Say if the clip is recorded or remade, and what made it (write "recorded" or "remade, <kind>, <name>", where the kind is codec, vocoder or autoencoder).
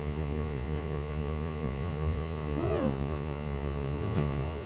remade, vocoder, Vocos